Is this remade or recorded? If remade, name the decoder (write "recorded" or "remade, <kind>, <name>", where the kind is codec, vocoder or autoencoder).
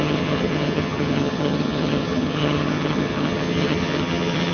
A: remade, vocoder, HiFi-GAN